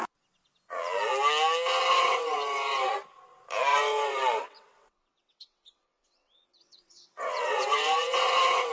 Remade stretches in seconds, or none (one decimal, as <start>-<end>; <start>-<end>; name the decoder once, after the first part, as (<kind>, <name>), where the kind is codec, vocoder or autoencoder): 1.9-2.9 (vocoder, WaveNeXt); 3.7-8.7